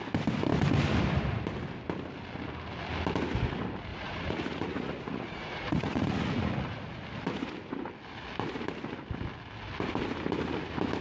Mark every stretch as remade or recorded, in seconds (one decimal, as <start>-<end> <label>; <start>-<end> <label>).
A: 0.0-3.9 recorded; 3.9-7.0 remade; 7.0-11.0 recorded